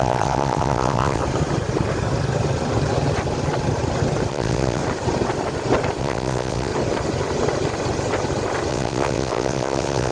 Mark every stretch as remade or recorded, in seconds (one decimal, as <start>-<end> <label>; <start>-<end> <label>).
0.0-1.2 remade; 1.2-4.3 recorded; 4.3-4.8 remade; 4.8-6.0 recorded; 6.0-6.7 remade; 6.7-8.7 recorded; 8.7-10.1 remade